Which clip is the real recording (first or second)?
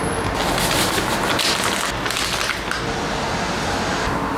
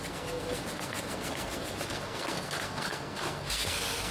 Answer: first